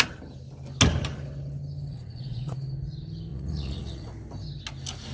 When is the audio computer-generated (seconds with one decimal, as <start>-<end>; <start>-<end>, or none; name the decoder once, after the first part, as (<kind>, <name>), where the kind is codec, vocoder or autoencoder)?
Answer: 1.9-2.6 (vocoder, Vocos); 3.3-4.1